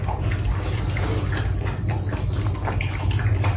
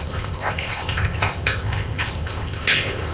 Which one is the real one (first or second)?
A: first